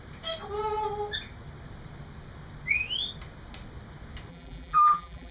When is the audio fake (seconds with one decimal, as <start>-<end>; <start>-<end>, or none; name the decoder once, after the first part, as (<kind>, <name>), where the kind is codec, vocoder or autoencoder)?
4.3-5.3 (vocoder, BigVGAN v2)